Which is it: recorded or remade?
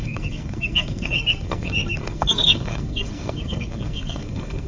remade